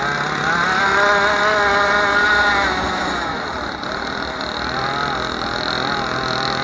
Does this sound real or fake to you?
real